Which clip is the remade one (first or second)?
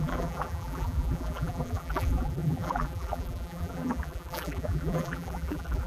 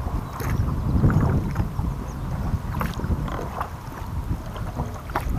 first